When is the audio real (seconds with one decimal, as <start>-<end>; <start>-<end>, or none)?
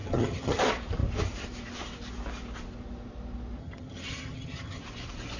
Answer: 0.6-3.6; 4.8-5.4